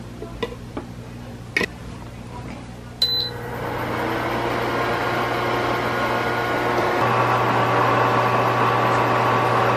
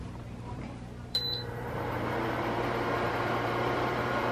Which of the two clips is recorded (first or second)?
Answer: first